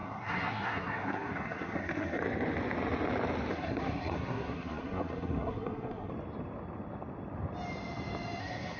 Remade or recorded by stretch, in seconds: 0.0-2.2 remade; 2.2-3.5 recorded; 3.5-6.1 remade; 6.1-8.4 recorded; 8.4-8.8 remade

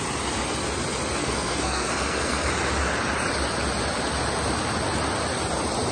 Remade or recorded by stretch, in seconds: 0.0-1.2 recorded; 1.2-2.5 remade; 2.5-5.9 recorded

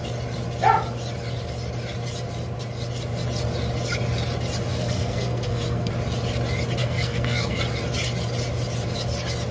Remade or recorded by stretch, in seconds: 0.0-4.7 recorded; 4.7-5.9 remade; 5.9-6.8 recorded; 6.8-7.6 remade; 7.6-9.5 recorded

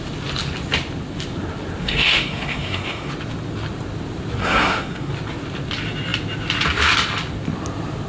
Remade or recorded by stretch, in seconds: 0.0-1.8 recorded; 1.8-3.1 remade; 3.1-4.4 recorded; 4.4-5.1 remade; 5.1-8.1 recorded

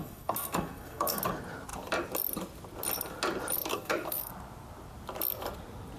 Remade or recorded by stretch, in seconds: 0.0-1.2 remade; 1.2-3.7 recorded; 3.7-4.3 remade; 4.3-6.0 recorded

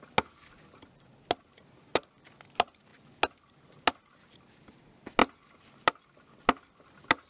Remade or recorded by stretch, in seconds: 0.0-7.3 recorded

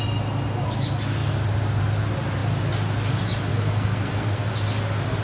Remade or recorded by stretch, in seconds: 0.0-3.5 recorded; 3.5-4.5 remade; 4.5-5.2 recorded